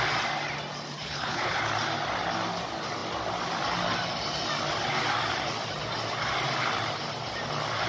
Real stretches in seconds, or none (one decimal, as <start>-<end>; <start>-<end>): 0.0-1.0; 1.6-7.9